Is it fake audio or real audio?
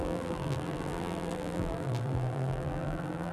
fake